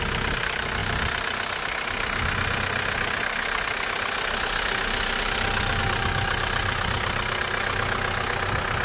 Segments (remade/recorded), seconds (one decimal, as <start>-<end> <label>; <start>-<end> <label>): 0.0-8.8 recorded